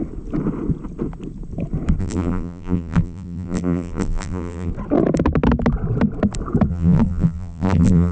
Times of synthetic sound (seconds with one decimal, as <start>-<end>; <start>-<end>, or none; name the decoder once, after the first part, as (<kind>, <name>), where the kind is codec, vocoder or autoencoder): 2.0-4.7 (vocoder, BigVGAN v2); 6.7-8.1